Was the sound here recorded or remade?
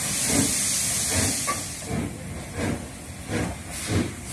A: recorded